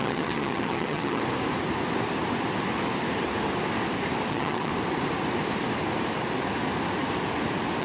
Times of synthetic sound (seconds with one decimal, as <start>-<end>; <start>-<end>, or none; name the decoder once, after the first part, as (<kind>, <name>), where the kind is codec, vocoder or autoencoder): 0.0-1.2 (vocoder, HiFi-GAN); 4.3-4.7